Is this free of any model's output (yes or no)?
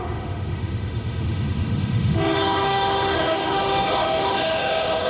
no